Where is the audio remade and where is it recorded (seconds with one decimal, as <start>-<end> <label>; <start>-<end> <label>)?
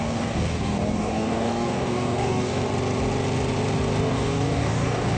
0.0-2.7 remade; 2.7-4.0 recorded; 4.0-5.2 remade